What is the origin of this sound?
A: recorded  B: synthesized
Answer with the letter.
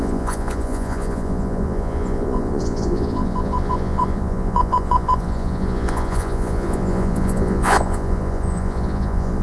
B